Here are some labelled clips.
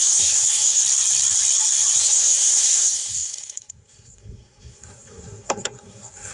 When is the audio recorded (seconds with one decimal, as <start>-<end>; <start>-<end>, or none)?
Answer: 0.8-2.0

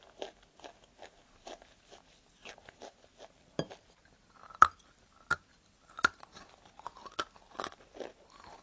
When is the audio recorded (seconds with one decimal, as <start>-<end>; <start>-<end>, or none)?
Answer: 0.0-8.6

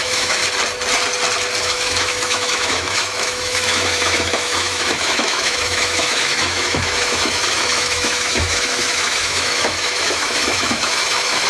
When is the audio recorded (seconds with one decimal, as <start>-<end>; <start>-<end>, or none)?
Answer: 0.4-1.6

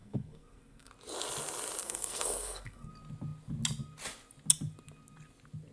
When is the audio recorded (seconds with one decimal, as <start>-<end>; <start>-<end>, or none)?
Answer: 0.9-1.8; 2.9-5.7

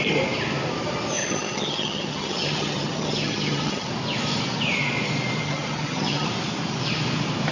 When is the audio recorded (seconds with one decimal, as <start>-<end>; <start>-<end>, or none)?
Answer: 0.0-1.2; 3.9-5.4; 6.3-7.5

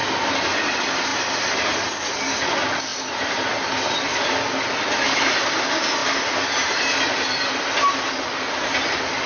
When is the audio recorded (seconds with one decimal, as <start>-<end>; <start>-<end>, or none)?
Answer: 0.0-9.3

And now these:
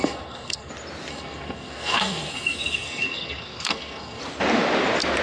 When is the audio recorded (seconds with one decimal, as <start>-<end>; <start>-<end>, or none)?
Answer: 0.7-1.1; 4.2-5.2